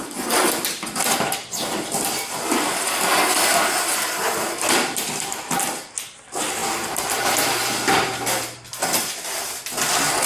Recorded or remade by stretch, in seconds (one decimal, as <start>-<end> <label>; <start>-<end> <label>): 0.0-10.3 recorded